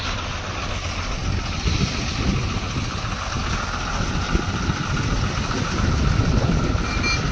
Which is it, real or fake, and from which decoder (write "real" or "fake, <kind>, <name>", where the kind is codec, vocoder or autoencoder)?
real